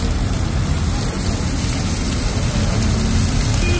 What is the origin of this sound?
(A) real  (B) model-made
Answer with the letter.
A